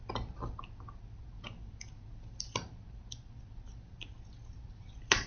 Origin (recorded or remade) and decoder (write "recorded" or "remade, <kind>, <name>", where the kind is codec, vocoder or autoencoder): recorded